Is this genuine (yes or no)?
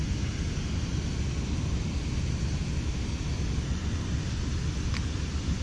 yes